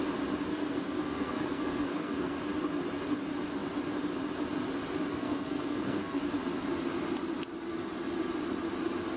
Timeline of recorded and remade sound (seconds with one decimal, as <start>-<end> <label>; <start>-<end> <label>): 0.0-0.5 recorded; 0.5-2.4 remade; 2.4-5.1 recorded; 5.1-6.2 remade; 6.2-9.2 recorded